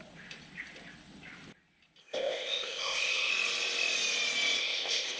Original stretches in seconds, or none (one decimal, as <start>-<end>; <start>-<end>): 0.0-2.0; 3.3-4.6